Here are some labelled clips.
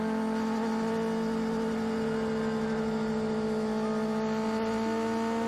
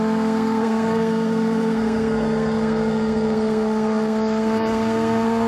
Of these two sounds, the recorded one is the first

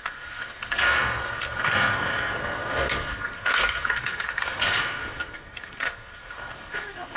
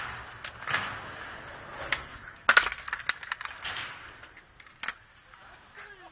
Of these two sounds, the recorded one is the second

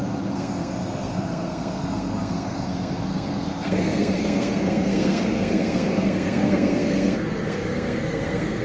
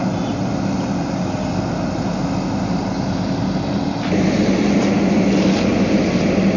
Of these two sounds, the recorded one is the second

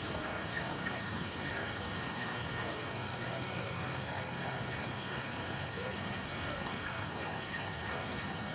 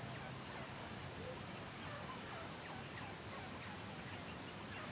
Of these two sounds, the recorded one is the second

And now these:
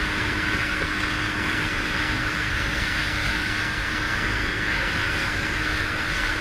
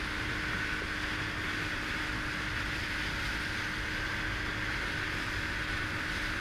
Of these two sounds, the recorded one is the second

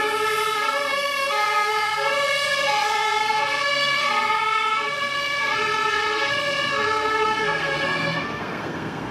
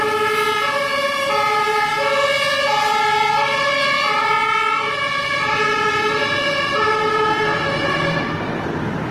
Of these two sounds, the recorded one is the second